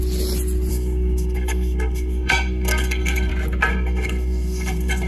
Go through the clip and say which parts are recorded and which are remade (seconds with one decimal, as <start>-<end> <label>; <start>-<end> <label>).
0.0-0.7 recorded; 0.7-3.3 remade; 3.3-3.7 recorded; 3.7-5.1 remade